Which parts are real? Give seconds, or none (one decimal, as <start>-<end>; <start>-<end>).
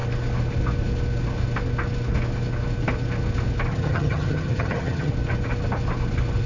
0.0-3.7; 5.1-6.5